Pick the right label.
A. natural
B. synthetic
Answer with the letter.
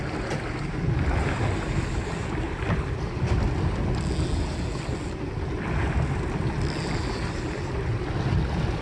A